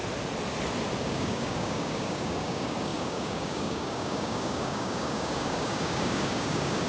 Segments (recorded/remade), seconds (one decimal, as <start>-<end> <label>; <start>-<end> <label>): 0.0-1.0 recorded; 1.0-6.9 remade